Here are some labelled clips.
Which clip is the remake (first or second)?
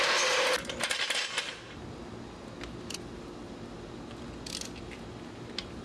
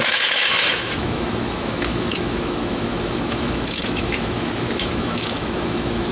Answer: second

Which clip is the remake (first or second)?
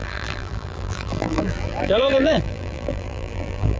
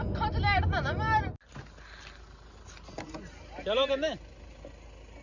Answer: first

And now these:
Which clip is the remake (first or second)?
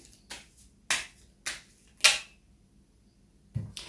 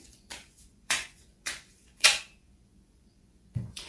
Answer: second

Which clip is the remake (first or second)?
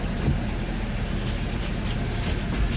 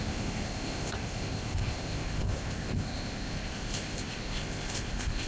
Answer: second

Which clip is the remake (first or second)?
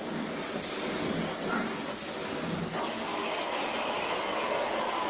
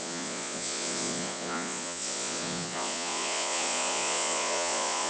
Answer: second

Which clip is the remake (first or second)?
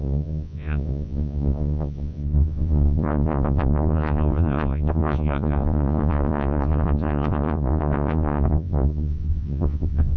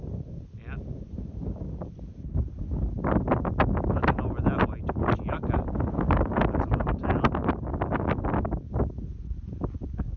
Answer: first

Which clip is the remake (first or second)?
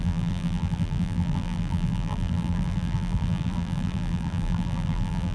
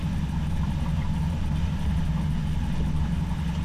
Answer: first